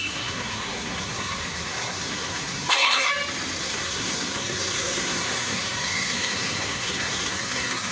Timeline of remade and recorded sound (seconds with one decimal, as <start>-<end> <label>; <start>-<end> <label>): 0.0-3.1 remade; 3.1-3.6 recorded; 3.6-7.9 remade